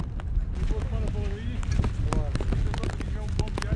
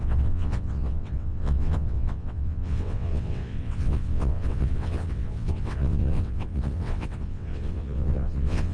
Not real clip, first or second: second